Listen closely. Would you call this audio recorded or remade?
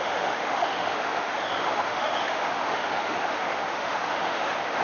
remade